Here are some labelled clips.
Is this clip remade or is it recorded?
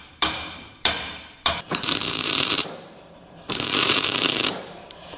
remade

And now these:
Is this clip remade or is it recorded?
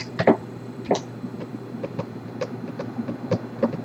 remade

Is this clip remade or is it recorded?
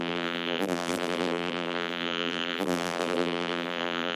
remade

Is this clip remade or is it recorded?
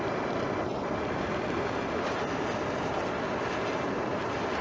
recorded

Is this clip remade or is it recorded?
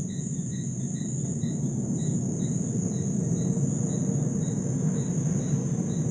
recorded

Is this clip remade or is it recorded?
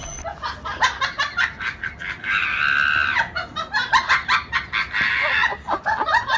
recorded